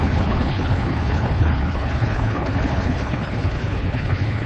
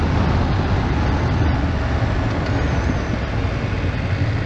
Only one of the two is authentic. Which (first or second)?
second